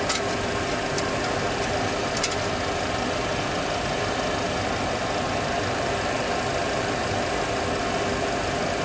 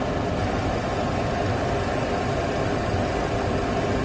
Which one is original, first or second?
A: first